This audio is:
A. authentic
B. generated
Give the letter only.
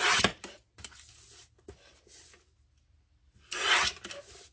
A